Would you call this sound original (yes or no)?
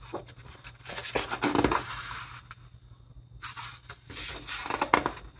yes